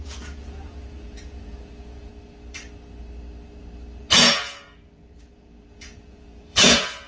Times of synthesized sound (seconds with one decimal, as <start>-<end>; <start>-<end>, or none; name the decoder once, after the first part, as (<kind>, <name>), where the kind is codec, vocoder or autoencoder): 0.0-2.1 (vocoder, Vocos); 4.2-7.1